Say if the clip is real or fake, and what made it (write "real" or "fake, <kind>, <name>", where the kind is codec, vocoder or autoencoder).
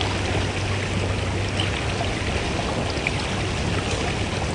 real